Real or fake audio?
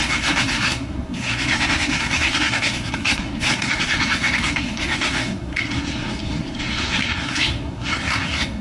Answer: fake